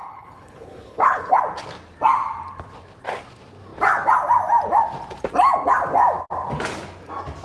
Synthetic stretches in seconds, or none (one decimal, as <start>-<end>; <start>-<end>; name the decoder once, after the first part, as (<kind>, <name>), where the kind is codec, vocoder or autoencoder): 0.0-1.4 (codec, HILCodec)